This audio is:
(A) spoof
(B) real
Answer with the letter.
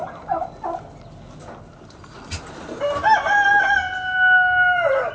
B